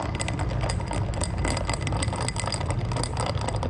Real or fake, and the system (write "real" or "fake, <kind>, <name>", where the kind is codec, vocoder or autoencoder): real